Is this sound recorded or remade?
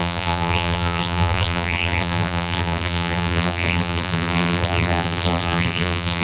remade